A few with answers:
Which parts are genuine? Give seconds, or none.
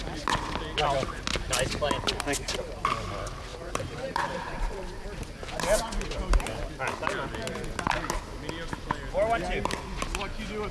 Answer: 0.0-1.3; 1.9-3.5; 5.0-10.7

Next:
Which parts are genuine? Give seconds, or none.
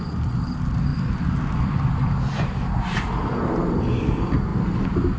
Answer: 0.0-4.5